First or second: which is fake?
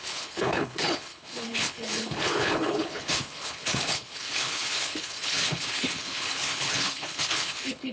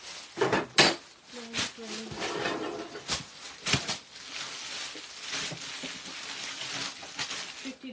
first